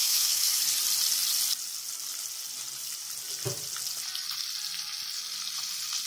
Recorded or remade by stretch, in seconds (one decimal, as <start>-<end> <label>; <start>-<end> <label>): 0.0-0.6 remade; 0.6-6.1 recorded